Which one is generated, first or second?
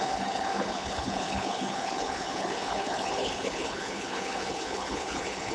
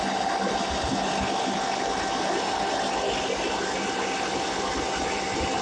first